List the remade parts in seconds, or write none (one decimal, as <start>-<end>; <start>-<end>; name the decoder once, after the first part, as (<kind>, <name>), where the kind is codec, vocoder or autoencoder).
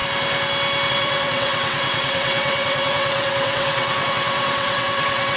0.9-5.4 (vocoder, WaveNeXt)